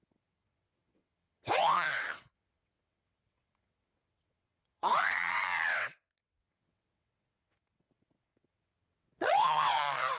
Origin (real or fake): fake